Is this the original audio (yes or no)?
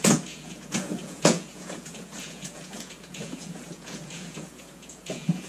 no